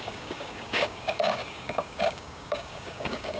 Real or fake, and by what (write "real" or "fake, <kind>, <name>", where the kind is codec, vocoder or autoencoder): fake, codec, DAC